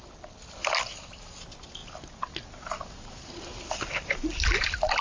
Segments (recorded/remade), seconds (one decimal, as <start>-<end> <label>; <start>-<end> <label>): 0.0-5.0 recorded